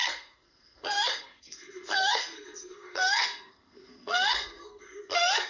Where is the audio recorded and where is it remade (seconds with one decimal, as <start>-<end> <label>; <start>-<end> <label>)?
0.0-5.5 remade